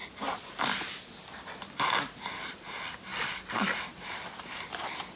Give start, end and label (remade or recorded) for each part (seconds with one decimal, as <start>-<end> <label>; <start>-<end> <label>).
0.0-5.2 recorded

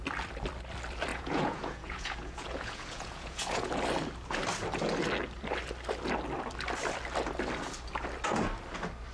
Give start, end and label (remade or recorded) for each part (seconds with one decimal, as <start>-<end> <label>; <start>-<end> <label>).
0.0-1.1 recorded; 1.1-3.7 remade; 3.7-9.1 recorded

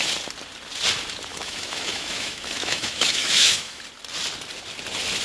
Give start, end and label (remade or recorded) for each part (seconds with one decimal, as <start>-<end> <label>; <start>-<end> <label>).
0.0-1.3 recorded; 1.3-3.8 remade; 3.8-5.2 recorded

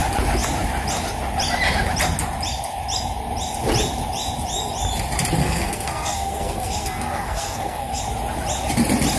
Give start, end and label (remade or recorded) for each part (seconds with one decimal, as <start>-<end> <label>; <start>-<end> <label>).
0.0-5.4 recorded; 5.4-8.0 remade; 8.0-9.2 recorded

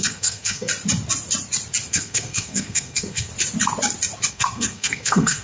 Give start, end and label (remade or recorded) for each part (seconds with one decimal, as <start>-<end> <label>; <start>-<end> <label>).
0.0-0.7 remade; 0.7-1.9 recorded; 1.9-3.3 remade; 3.3-4.3 recorded; 4.3-5.4 remade